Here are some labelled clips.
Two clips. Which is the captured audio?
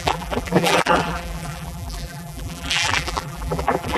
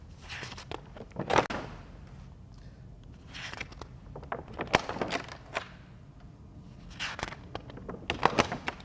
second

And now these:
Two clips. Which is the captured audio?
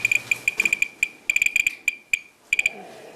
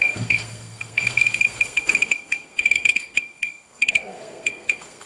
first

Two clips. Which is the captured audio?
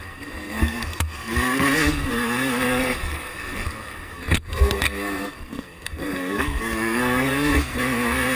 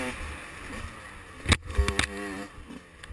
second